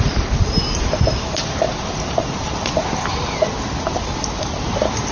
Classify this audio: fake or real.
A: real